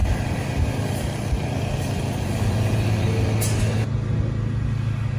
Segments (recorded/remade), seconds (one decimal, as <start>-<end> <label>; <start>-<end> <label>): 0.0-2.3 remade; 2.3-5.2 recorded